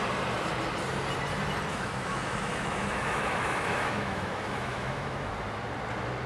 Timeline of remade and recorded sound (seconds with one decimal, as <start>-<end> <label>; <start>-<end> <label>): 0.0-1.7 recorded; 1.7-5.3 remade; 5.3-6.3 recorded